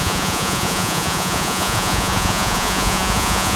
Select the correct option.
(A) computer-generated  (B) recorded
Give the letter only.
A